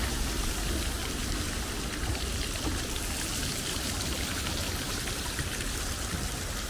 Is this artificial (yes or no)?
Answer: no